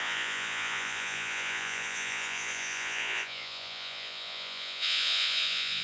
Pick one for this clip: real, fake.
fake